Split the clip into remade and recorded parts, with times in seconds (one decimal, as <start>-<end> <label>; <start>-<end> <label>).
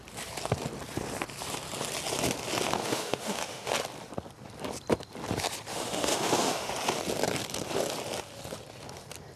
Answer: 0.0-2.8 recorded; 2.8-3.7 remade; 3.7-5.7 recorded; 5.7-6.7 remade; 6.7-9.4 recorded